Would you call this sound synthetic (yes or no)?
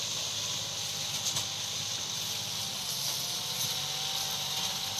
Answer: no